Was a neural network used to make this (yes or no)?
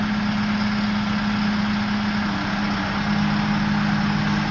no